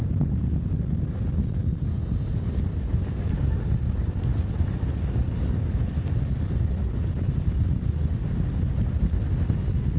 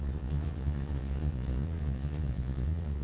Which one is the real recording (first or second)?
first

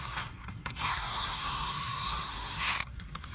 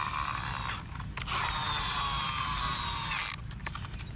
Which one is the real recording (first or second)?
second